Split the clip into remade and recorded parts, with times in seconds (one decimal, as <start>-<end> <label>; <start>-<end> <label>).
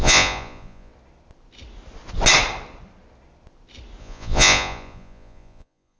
0.0-0.9 remade; 0.9-4.0 recorded; 4.0-6.0 remade